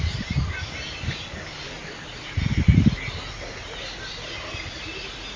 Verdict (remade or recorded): recorded